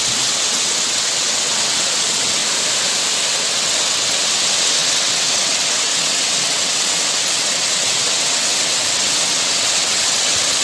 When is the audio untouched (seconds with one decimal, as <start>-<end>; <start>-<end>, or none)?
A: 2.4-3.3